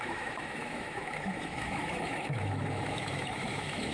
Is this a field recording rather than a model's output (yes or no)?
no